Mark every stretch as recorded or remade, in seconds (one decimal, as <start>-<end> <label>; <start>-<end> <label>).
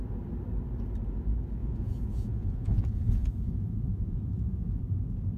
0.0-1.6 recorded; 1.6-4.8 remade; 4.8-5.4 recorded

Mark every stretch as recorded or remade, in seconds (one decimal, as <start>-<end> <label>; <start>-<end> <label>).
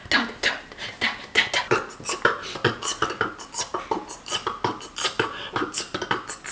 0.0-6.5 recorded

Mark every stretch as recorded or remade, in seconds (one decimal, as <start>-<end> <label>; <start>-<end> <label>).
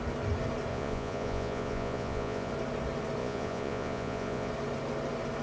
0.0-0.7 recorded; 0.7-2.5 remade; 2.5-3.2 recorded; 3.2-4.5 remade; 4.5-5.4 recorded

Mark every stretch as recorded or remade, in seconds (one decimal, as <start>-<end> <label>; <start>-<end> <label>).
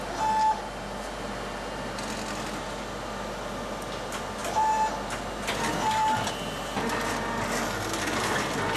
0.0-8.8 recorded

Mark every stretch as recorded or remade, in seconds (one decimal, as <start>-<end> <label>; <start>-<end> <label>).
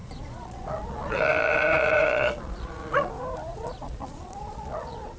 0.0-3.1 remade; 3.1-3.5 recorded; 3.5-5.2 remade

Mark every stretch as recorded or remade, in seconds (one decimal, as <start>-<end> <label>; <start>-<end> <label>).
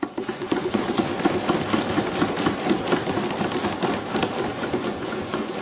0.0-1.1 remade; 1.1-4.5 recorded; 4.5-5.6 remade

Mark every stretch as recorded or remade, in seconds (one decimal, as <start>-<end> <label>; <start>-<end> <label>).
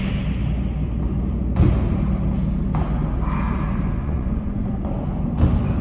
0.0-4.0 recorded; 4.0-4.8 remade; 4.8-5.8 recorded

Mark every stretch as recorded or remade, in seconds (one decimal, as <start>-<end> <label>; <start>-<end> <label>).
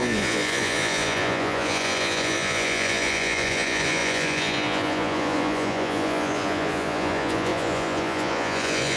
0.0-9.0 remade